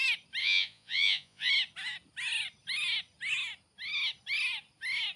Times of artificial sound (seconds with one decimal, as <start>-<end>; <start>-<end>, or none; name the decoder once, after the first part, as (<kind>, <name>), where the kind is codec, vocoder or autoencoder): 0.4-1.5 (vocoder, Vocos)